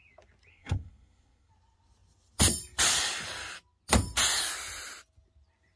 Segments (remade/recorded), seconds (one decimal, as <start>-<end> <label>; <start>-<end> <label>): 0.0-0.5 recorded; 0.5-1.5 remade; 1.5-5.8 recorded